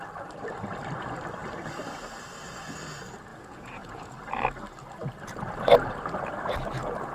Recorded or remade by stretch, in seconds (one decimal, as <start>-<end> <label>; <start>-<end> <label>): 0.0-3.3 recorded; 3.3-4.2 remade; 4.2-7.1 recorded